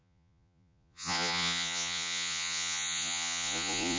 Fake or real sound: fake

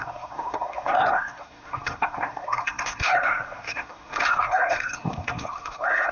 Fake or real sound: fake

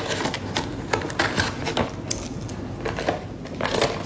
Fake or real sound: real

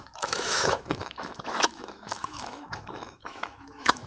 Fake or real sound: fake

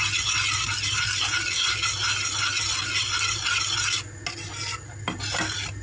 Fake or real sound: real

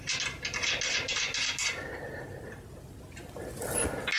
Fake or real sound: real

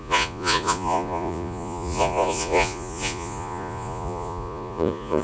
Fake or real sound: fake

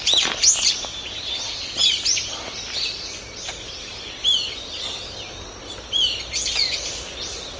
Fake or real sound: real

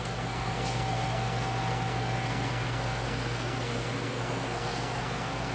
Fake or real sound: fake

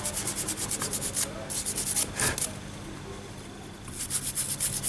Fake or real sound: real